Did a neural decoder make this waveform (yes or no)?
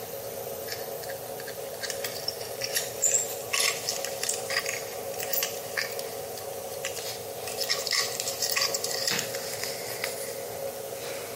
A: no